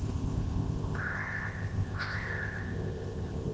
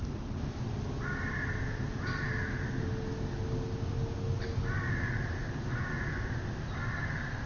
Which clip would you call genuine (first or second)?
second